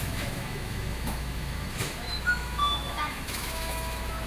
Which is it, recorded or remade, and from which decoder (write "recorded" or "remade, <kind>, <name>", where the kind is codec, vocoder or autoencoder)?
remade, autoencoder, DAC-VAE